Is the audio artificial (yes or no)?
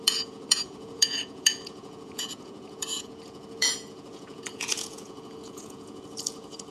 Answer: yes